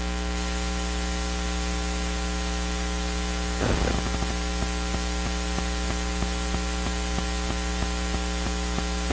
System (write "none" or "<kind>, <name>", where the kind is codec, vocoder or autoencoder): none